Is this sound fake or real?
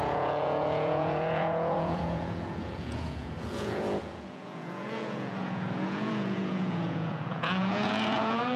fake